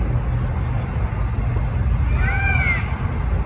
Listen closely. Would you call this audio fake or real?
real